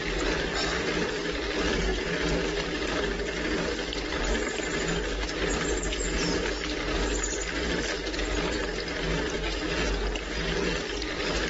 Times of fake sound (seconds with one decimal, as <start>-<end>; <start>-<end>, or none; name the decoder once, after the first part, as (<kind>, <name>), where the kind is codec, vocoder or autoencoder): none